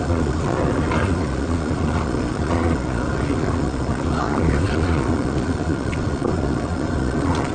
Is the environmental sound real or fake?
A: fake